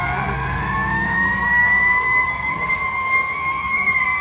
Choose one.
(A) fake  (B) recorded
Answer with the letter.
A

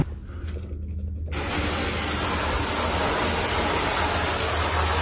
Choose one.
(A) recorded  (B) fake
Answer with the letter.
A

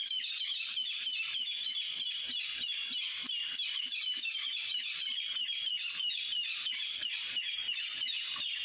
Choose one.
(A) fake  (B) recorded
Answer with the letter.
A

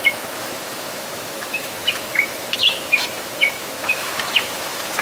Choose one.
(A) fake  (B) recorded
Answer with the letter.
A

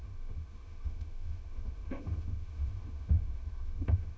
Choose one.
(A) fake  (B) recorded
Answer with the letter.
A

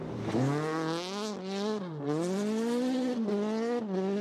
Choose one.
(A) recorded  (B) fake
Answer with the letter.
A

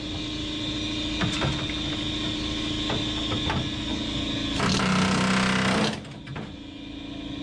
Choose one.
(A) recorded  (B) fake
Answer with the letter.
A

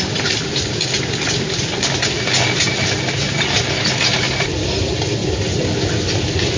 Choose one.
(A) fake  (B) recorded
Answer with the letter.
B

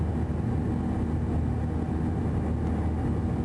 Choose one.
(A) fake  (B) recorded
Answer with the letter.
B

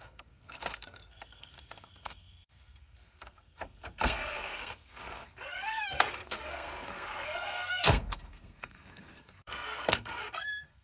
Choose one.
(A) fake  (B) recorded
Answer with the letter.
A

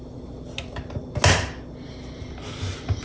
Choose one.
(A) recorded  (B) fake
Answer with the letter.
A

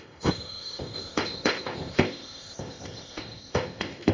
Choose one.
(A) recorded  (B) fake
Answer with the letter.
B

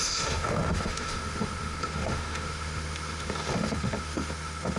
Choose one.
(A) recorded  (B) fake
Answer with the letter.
B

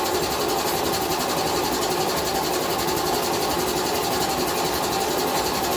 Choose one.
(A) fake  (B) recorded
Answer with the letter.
B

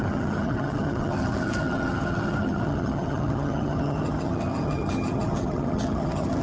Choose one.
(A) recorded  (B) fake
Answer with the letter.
B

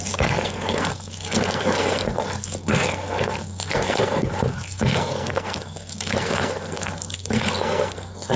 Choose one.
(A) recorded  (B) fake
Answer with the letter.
B